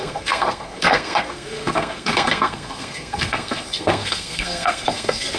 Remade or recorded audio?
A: remade